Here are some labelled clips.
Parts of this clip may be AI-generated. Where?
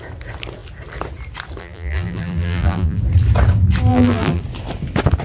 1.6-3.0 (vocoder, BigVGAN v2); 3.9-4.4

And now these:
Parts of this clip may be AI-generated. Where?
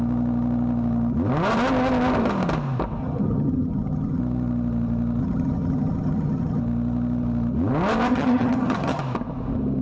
3.0-4.2 (vocoder, HiFi-GAN); 5.2-6.6; 8.1-9.0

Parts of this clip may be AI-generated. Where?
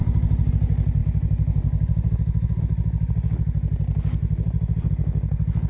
0.0-0.5 (vocoder, BigVGAN v2); 1.0-2.6; 4.2-4.9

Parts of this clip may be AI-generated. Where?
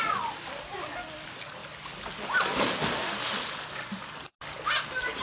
none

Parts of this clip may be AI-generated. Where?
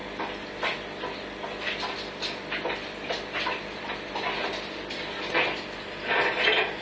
none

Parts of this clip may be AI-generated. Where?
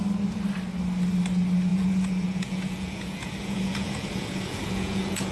1.7-5.3 (vocoder, Vocos)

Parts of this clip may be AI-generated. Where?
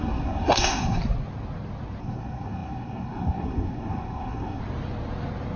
0.0-1.0 (codec, SNAC); 2.0-4.6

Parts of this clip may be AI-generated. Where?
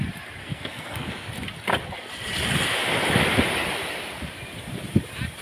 0.4-1.3 (codec, SNAC)